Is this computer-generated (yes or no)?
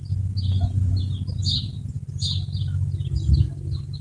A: no